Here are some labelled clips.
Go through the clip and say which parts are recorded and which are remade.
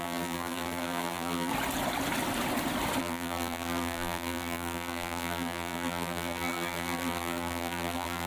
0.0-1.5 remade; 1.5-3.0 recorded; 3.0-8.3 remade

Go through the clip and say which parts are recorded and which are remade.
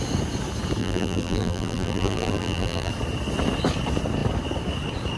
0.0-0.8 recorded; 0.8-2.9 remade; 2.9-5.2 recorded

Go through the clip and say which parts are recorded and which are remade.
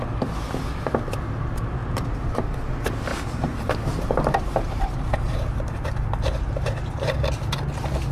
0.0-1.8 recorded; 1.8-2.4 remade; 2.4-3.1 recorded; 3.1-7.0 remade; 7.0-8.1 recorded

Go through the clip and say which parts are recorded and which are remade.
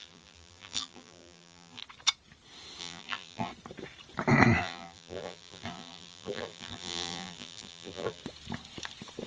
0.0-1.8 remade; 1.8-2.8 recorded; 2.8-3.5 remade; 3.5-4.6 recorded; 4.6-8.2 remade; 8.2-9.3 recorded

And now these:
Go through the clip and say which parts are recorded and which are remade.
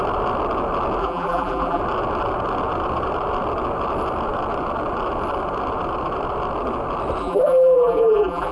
0.0-1.0 recorded; 1.0-1.8 remade; 1.8-7.2 recorded; 7.2-8.5 remade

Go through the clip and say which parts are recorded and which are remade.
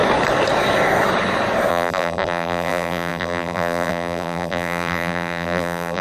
0.0-1.7 recorded; 1.7-6.0 remade